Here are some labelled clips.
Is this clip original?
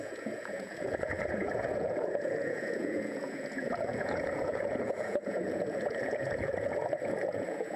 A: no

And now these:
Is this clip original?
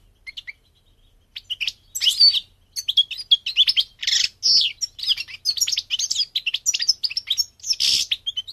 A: yes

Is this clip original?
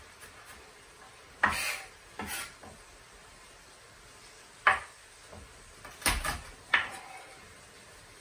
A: yes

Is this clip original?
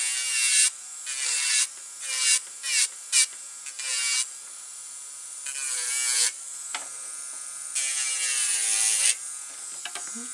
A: yes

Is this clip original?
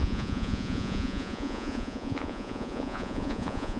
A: no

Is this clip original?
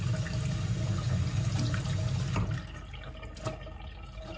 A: yes